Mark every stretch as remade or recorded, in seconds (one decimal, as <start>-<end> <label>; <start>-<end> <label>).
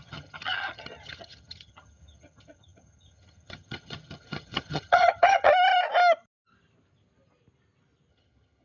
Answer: 0.0-5.5 remade; 5.5-8.1 recorded; 8.1-8.6 remade